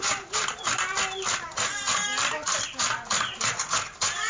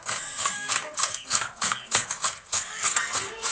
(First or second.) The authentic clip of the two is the first